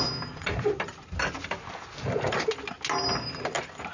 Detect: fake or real real